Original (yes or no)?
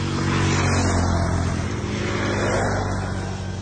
yes